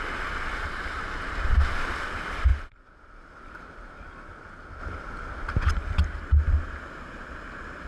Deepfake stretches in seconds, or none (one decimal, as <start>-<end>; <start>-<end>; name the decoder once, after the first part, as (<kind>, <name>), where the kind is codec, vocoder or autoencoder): none